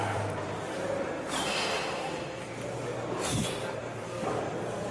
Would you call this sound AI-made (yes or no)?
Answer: yes